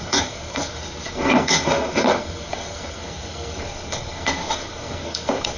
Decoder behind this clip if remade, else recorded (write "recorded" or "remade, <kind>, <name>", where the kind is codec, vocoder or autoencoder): remade, codec, SNAC